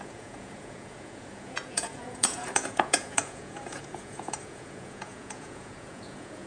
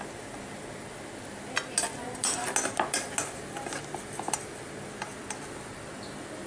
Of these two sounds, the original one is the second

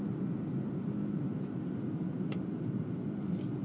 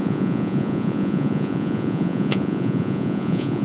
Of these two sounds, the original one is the first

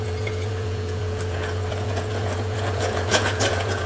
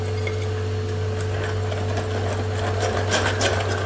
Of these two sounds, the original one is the second